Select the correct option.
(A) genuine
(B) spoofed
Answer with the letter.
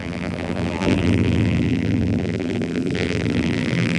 B